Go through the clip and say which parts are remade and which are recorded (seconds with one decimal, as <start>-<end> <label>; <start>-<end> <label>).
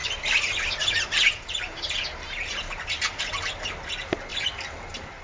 0.0-2.0 remade; 2.0-5.2 recorded